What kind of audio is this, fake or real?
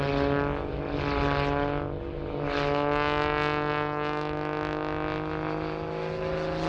real